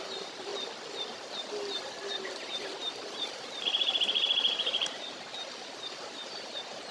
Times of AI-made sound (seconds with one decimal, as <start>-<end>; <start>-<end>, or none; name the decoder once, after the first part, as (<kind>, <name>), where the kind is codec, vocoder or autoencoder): 0.0-0.5 (vocoder, BigVGAN v2); 2.1-6.9